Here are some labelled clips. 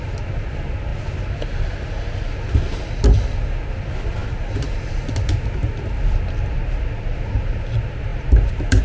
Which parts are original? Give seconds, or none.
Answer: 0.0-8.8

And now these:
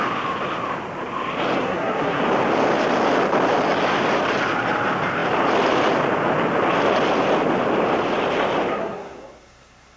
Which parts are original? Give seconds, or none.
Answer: 0.0-1.6; 2.2-8.7

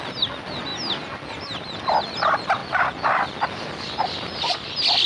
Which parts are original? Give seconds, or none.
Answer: 0.0-5.1

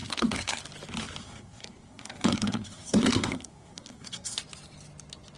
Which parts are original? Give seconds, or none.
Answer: 0.6-1.2; 4.4-5.4

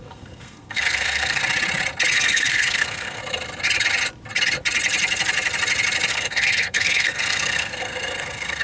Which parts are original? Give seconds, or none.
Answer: 1.4-2.1; 3.2-6.1